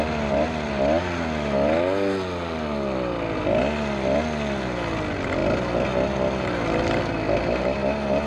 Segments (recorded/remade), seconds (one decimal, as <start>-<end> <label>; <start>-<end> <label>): 0.0-8.3 recorded